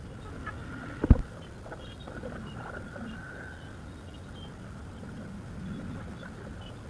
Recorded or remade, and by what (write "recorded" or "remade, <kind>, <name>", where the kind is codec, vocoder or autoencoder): recorded